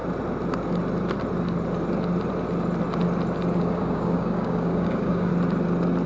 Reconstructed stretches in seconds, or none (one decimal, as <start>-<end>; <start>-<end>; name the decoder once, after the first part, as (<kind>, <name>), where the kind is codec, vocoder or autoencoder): 3.7-5.3 (codec, DAC)